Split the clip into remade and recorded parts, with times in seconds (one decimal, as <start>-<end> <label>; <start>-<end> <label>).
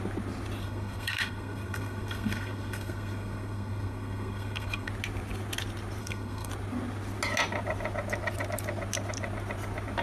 0.0-0.6 recorded; 0.6-4.9 remade; 4.9-6.0 recorded; 6.0-6.5 remade; 6.5-10.0 recorded